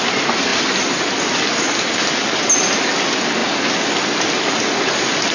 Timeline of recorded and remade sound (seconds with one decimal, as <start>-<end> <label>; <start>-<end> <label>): 0.0-5.3 recorded